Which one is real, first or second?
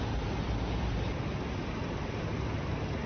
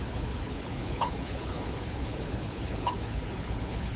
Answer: first